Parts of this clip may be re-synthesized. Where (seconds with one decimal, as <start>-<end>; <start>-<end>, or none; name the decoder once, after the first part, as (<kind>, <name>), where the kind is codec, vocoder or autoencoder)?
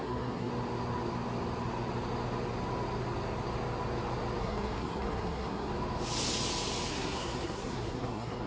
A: 0.0-0.5 (codec, SNAC); 4.4-5.7; 6.9-8.5